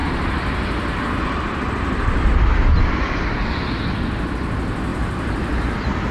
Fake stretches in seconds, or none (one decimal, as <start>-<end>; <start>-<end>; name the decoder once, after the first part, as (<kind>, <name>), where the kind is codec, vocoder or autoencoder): 0.0-3.7 (vocoder, BigVGAN v2); 4.9-6.1